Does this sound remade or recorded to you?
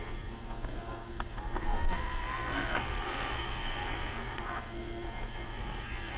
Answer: remade